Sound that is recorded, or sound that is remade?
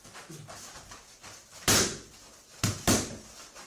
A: recorded